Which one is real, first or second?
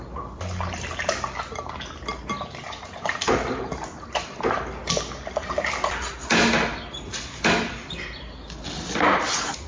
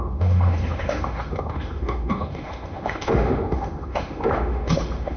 first